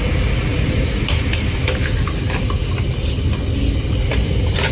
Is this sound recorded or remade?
recorded